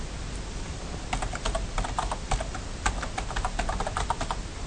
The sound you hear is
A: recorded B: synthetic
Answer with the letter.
A